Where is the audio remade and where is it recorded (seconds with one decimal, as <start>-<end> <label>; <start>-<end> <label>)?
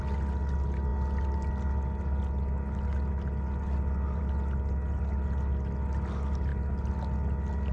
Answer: 0.0-7.7 recorded